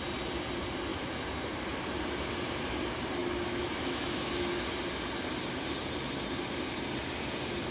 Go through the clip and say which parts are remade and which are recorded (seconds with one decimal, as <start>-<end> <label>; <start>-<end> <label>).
0.0-3.2 recorded; 3.2-4.6 remade; 4.6-7.7 recorded